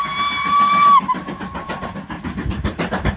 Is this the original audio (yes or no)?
yes